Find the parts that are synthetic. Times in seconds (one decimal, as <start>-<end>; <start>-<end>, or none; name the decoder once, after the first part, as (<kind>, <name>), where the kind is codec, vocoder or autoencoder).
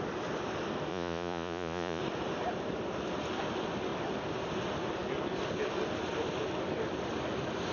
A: 0.9-2.0 (vocoder, Vocos)